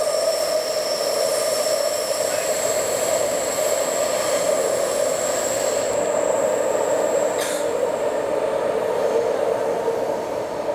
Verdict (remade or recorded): recorded